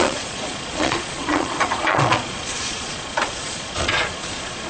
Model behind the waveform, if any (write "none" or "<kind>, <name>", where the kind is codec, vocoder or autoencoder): vocoder, Vocos